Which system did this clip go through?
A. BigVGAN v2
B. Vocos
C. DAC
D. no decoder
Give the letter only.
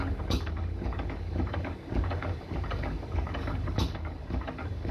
C